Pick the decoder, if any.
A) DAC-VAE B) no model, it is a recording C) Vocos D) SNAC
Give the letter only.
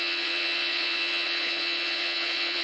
C